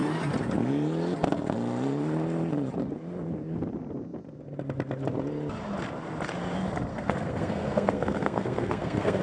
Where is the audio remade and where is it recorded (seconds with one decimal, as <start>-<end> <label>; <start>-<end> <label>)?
0.0-6.9 recorded; 6.9-9.2 remade